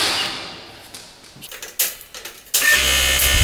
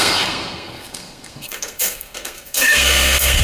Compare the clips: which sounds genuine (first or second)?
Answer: first